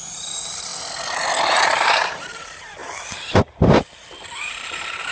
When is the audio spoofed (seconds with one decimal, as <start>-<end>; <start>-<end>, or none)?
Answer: 0.0-0.7; 1.4-2.8; 4.4-5.1